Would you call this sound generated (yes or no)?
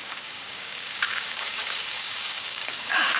yes